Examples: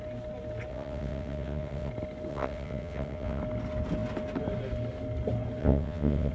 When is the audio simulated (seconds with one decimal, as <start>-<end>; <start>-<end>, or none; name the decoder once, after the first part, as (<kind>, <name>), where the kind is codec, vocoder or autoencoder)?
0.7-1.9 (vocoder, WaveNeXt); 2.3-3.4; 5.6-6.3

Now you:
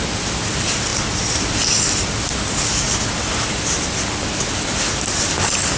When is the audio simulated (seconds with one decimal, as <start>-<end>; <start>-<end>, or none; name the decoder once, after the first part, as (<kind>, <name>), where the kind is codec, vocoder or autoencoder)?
none

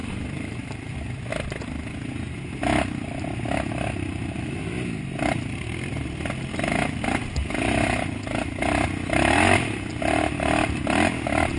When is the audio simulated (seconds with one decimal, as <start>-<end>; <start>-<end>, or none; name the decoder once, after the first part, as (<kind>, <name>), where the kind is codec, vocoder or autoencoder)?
0.0-1.3 (vocoder, BigVGAN v2)